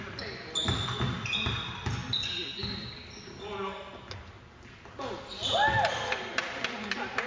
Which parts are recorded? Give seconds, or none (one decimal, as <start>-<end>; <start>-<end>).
0.0-7.3